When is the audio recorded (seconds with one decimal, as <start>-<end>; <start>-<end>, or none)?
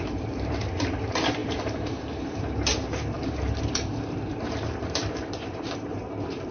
none